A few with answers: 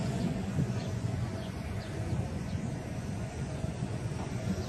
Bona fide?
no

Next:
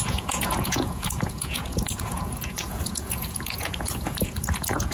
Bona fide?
no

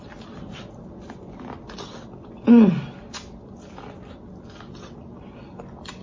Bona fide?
yes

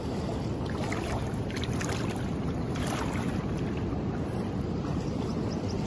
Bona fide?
yes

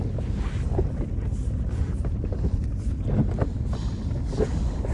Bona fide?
yes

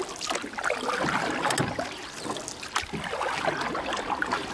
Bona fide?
yes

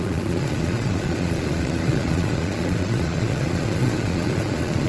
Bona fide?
no